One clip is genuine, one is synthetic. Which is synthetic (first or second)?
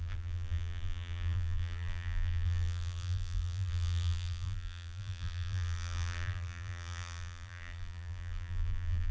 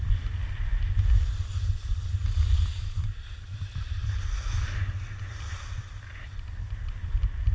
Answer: first